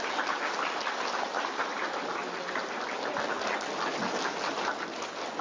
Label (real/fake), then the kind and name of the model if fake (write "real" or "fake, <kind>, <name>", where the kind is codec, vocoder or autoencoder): real